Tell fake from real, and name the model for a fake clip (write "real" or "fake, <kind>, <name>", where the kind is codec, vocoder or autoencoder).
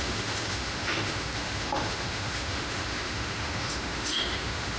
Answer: fake, autoencoder, DAC-VAE